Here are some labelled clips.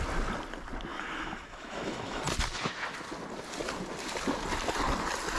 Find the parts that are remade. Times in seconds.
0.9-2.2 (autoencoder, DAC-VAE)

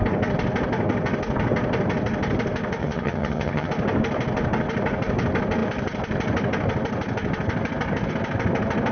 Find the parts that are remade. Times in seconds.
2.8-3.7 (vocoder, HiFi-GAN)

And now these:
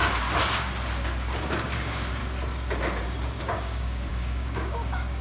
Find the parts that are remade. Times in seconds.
1.4-2.2 (codec, DAC); 3.4-5.2

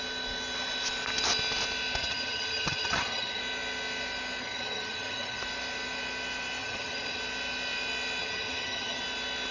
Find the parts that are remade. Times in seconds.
2.0-3.4 (vocoder, HiFi-GAN); 4.4-5.4; 6.6-7.2; 8.2-9.0

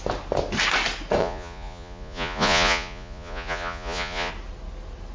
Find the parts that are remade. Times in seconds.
1.2-4.3 (vocoder, Vocos)

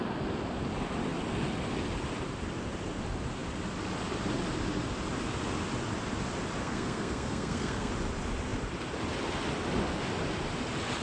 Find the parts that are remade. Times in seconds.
6.6-7.9 (codec, SNAC)

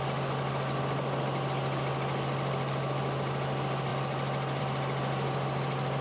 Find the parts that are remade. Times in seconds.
none

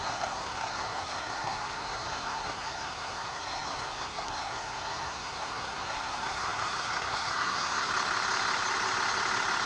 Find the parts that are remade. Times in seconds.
0.0-7.9 (codec, SNAC)